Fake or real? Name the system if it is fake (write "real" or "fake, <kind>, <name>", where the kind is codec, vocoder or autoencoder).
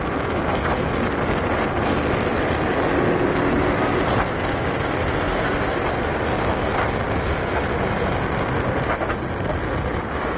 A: real